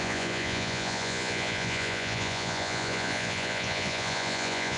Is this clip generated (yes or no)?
yes